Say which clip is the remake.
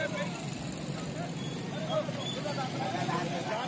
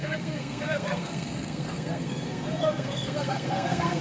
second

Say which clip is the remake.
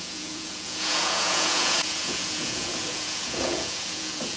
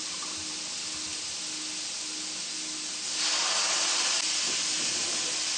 first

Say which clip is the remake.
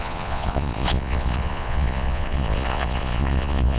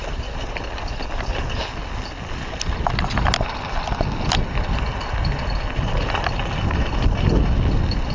first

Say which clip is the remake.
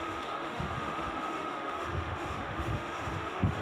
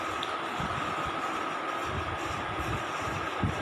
first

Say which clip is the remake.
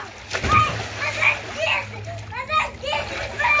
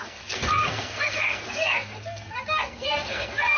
second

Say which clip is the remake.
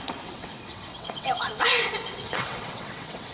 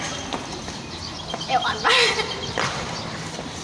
first